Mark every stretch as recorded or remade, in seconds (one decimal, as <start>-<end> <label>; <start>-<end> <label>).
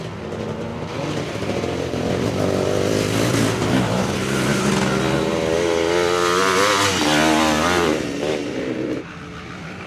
0.0-0.7 recorded; 0.7-2.1 remade; 2.1-3.6 recorded; 3.6-4.7 remade; 4.7-8.4 recorded; 8.4-9.1 remade; 9.1-9.9 recorded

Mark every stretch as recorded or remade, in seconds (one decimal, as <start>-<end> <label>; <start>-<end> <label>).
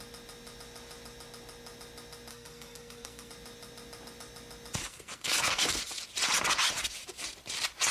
0.0-2.3 recorded; 2.3-3.3 remade; 3.3-4.8 recorded; 4.8-6.0 remade; 6.0-7.9 recorded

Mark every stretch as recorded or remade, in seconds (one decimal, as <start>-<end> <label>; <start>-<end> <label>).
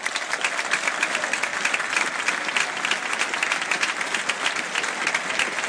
0.0-5.7 recorded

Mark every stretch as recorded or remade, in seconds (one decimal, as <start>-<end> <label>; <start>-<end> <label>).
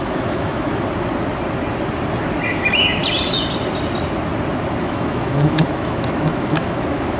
0.0-0.7 remade; 0.7-2.5 recorded; 2.5-3.0 remade; 3.0-4.8 recorded; 4.8-7.2 remade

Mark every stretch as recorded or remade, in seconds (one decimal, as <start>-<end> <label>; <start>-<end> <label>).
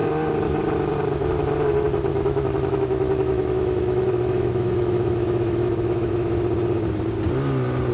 0.0-2.1 recorded; 2.1-6.1 remade; 6.1-7.9 recorded